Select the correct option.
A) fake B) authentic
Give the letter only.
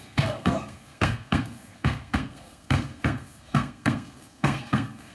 A